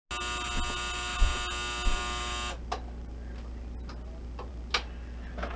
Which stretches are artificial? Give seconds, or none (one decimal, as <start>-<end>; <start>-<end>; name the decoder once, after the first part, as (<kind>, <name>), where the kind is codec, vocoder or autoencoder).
none